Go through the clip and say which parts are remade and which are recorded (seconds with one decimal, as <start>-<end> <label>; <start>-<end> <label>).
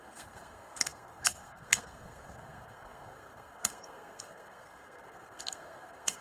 0.0-6.2 remade